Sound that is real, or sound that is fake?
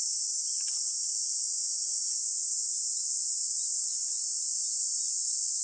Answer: real